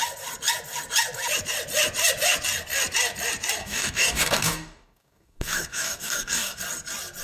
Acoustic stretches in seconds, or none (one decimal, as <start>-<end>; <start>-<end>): 0.0-3.6; 6.6-7.2